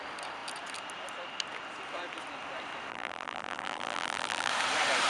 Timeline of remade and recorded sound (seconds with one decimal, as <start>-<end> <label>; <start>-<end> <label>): 0.0-2.9 recorded; 2.9-4.5 remade; 4.5-5.1 recorded